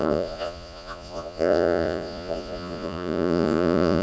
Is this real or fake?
fake